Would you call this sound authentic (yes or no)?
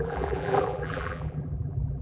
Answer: no